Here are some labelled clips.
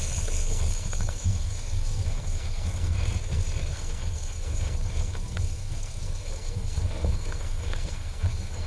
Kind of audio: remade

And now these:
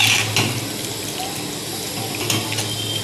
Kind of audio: recorded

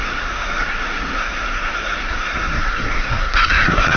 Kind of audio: remade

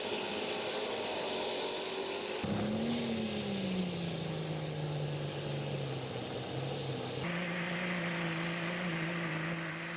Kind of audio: recorded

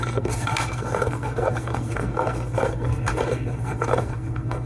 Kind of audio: remade